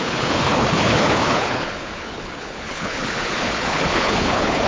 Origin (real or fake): fake